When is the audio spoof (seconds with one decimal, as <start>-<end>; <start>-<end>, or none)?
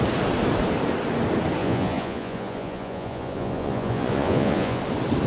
1.6-4.8